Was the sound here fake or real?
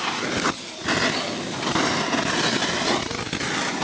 real